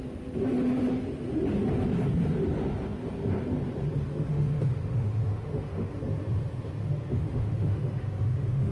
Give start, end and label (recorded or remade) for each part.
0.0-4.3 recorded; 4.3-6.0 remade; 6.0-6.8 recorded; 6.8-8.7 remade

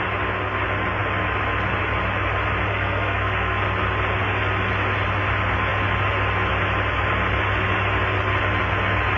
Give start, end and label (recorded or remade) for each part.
0.0-2.7 recorded; 2.7-3.6 remade; 3.6-9.2 recorded

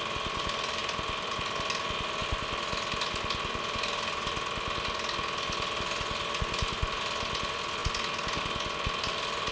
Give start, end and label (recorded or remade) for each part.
0.0-9.5 recorded

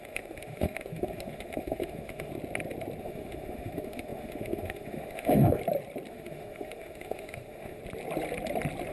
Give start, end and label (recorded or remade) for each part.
0.0-2.3 remade; 2.3-3.0 recorded; 3.0-5.6 remade; 5.6-6.1 recorded; 6.1-7.8 remade; 7.8-8.9 recorded

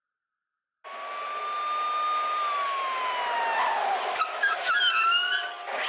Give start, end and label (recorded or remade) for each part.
0.0-5.9 recorded

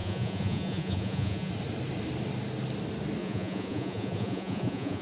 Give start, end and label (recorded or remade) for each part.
0.0-1.5 remade; 1.5-3.2 recorded; 3.2-5.0 remade